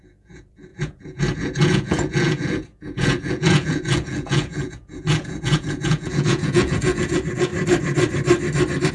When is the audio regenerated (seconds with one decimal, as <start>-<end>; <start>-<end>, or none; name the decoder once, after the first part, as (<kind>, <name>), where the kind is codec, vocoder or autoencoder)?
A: 0.0-7.5 (vocoder, Vocos)